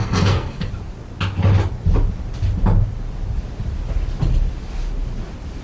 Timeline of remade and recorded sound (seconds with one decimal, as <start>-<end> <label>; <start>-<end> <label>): 0.0-0.7 remade; 0.7-5.6 recorded